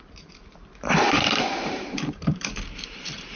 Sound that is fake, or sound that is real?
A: fake